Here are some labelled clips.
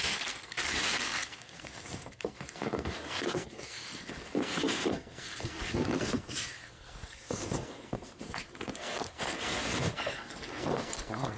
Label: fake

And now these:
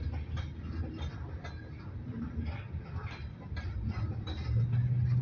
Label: real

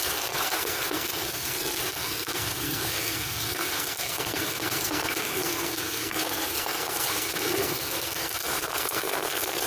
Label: fake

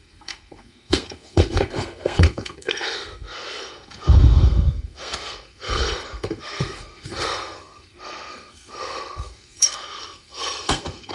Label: fake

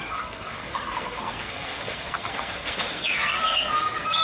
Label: fake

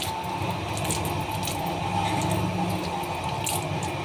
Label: real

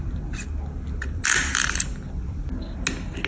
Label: real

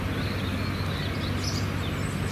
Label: real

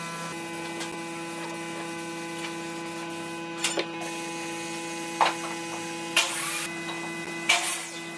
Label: real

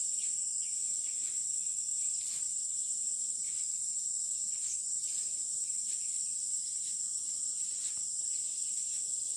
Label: real